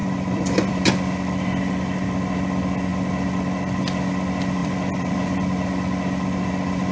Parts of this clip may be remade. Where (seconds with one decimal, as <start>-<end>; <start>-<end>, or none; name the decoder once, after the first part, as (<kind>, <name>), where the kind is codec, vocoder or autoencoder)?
0.0-0.9 (vocoder, BigVGAN v2); 4.6-5.1